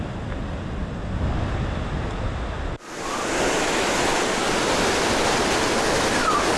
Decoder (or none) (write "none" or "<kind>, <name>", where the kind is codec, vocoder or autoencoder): none